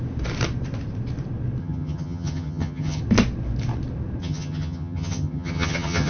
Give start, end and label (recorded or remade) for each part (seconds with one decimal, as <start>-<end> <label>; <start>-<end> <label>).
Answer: 0.0-1.6 recorded; 1.6-3.0 remade; 3.0-4.2 recorded; 4.2-6.1 remade